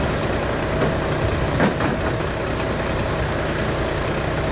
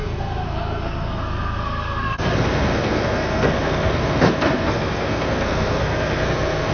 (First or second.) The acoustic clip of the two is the first